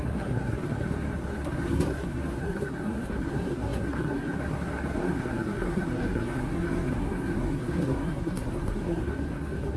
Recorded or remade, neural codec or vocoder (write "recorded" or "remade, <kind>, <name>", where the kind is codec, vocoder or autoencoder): remade, codec, SNAC